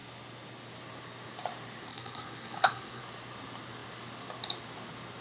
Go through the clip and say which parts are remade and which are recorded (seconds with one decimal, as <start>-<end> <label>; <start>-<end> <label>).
0.0-1.9 recorded; 1.9-3.0 remade; 3.0-5.2 recorded